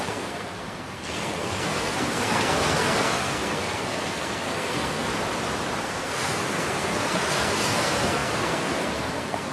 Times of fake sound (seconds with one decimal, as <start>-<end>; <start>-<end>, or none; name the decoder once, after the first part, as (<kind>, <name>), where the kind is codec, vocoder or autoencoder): 0.0-5.1 (codec, SNAC); 5.8-9.5